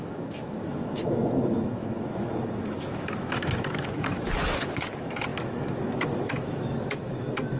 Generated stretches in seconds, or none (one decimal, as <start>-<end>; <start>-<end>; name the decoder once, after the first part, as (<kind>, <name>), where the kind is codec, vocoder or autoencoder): 0.0-7.6 (autoencoder, DAC-VAE)